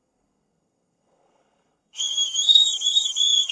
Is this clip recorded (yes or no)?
no